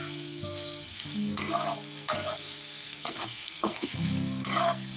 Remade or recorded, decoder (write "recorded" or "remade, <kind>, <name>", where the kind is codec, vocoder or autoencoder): remade, codec, SNAC